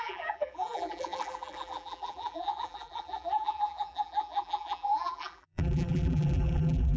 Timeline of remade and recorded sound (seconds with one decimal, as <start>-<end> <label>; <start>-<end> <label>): 0.0-7.0 remade